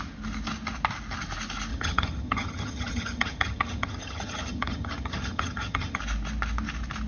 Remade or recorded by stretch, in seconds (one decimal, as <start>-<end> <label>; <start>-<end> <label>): 0.0-1.7 recorded; 1.7-6.0 remade; 6.0-7.1 recorded